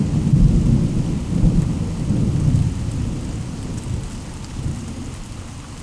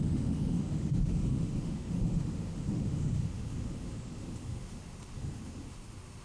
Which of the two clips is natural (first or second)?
first